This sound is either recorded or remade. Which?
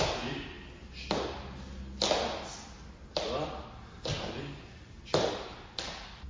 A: recorded